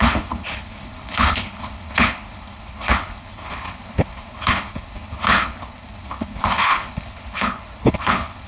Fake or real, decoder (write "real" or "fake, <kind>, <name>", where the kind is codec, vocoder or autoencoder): fake, codec, HILCodec